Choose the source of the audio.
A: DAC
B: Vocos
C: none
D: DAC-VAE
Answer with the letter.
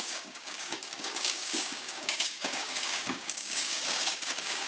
A